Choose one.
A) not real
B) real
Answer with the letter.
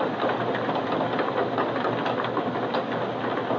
B